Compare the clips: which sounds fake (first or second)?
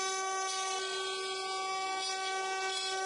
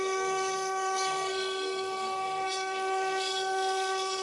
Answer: second